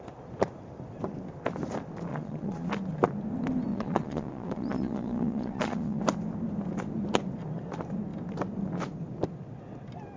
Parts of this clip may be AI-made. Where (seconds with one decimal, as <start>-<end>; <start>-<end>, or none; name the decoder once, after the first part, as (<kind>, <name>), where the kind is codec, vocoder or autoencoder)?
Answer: 2.1-2.7 (vocoder, Vocos); 3.7-6.0

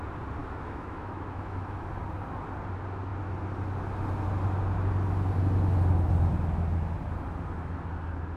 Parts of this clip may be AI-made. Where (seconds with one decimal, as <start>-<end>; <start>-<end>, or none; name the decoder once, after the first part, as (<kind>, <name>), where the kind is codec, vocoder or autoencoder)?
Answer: 0.4-1.8 (autoencoder, DAC-VAE)

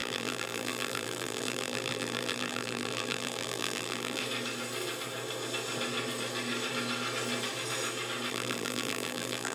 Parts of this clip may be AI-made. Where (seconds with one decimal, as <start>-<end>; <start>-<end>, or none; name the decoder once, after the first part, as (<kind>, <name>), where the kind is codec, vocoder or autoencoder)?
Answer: 0.0-4.2 (vocoder, BigVGAN v2); 8.3-9.5